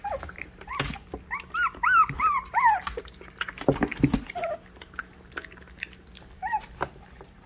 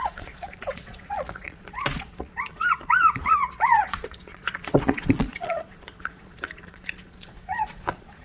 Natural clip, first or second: first